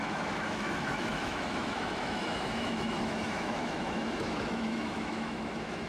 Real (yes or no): no